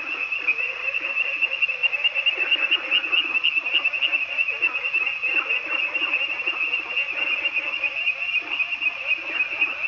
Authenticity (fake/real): real